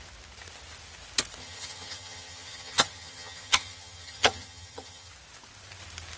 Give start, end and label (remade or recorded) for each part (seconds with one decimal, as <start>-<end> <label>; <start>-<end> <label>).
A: 0.0-1.4 recorded; 1.4-5.1 remade; 5.1-6.2 recorded